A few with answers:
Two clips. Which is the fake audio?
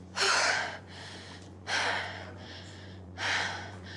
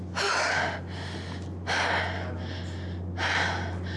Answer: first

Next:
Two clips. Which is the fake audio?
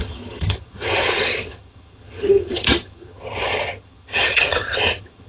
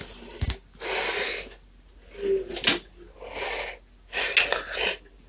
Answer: first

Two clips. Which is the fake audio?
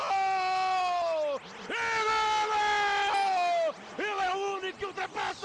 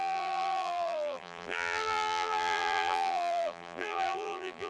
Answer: second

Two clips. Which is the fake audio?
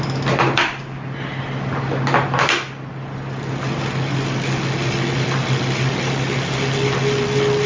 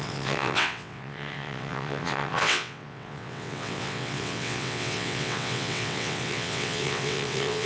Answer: second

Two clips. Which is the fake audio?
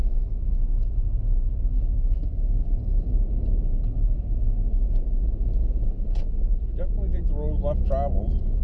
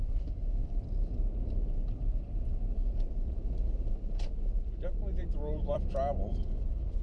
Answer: second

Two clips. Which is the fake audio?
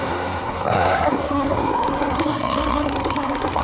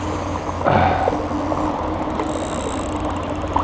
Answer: first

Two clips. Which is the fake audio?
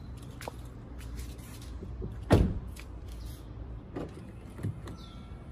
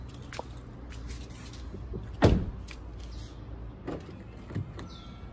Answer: first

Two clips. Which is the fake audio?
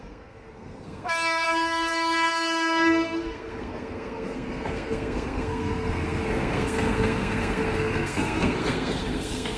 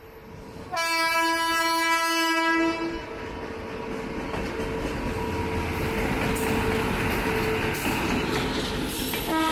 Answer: first